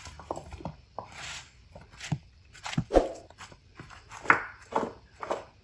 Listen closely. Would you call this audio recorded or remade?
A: recorded